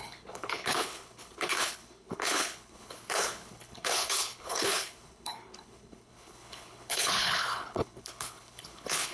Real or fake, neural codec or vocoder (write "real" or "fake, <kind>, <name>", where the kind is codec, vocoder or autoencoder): fake, codec, HILCodec